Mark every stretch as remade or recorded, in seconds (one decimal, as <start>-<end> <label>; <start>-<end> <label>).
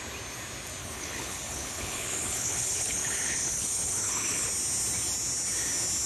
0.0-0.8 recorded; 0.8-4.5 remade; 4.5-6.1 recorded